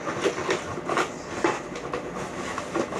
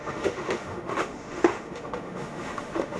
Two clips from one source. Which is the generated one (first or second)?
second